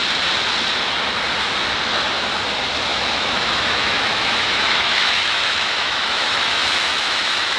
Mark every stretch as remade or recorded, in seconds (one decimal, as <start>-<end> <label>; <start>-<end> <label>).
0.0-2.9 recorded; 2.9-7.6 remade